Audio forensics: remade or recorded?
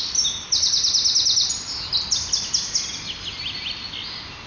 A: recorded